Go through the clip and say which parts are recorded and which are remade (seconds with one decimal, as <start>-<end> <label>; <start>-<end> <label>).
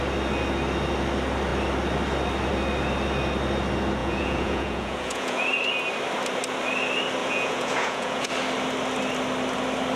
0.0-4.0 recorded; 4.0-5.4 remade; 5.4-7.2 recorded; 7.2-8.3 remade; 8.3-10.0 recorded